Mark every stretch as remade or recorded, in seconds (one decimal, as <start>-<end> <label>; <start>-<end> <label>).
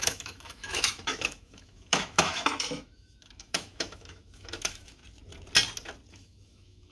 0.0-5.0 remade; 5.0-6.1 recorded; 6.1-6.9 remade